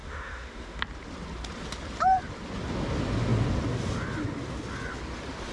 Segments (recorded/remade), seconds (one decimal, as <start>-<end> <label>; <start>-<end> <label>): 0.0-0.8 remade; 0.8-5.5 recorded